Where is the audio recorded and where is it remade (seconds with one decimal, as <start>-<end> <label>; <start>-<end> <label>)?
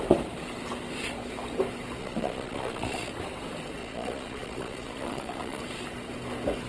0.0-2.0 recorded; 2.0-3.1 remade; 3.1-3.8 recorded; 3.8-5.6 remade; 5.6-6.7 recorded